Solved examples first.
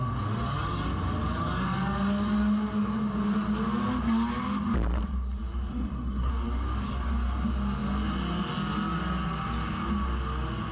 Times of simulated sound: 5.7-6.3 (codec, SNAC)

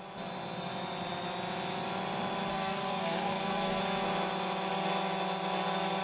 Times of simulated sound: 2.5-3.8 (codec, SNAC)

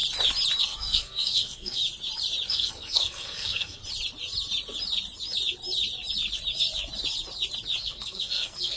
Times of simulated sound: 0.6-1.8 (codec, SNAC); 2.5-3.8; 7.8-8.8

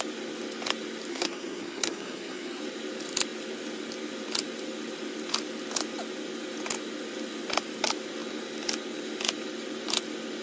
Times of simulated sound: 1.1-2.6 (codec, SNAC)

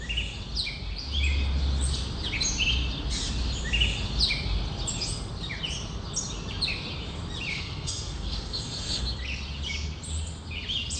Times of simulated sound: 7.5-9.0 (codec, SNAC)

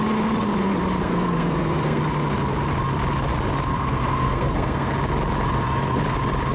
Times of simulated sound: 1.0-2.0 (codec, SNAC); 3.7-4.9